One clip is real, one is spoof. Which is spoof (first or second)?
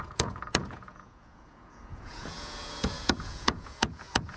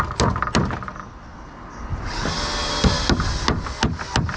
first